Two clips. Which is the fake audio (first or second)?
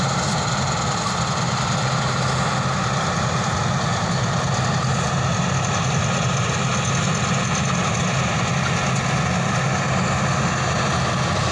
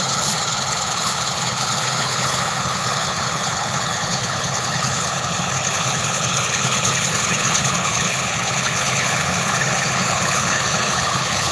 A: second